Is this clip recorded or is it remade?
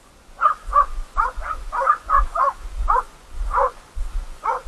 remade